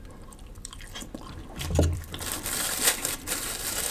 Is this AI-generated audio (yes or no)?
yes